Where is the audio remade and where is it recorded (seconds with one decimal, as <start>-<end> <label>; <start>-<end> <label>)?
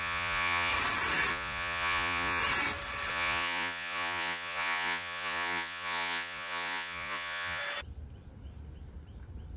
0.0-0.7 remade; 0.7-1.3 recorded; 1.3-2.4 remade; 2.4-3.1 recorded; 3.1-7.6 remade; 7.6-9.6 recorded